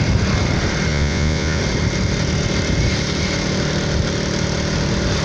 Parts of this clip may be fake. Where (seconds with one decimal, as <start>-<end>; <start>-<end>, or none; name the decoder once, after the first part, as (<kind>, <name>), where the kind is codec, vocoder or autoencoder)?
0.9-1.6 (vocoder, Vocos)